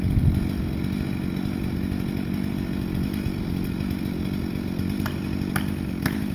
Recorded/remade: recorded